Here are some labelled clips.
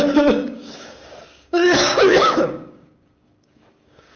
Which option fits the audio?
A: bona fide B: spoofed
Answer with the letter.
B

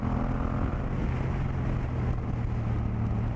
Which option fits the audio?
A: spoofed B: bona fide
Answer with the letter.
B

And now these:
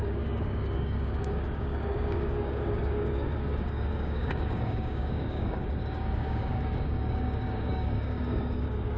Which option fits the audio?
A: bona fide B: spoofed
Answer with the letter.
B